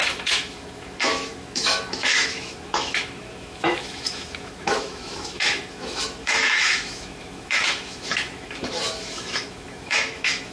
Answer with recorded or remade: remade